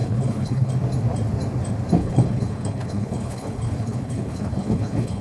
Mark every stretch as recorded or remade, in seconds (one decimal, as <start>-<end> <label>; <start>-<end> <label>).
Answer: 0.0-0.7 remade; 0.7-2.0 recorded; 2.0-5.2 remade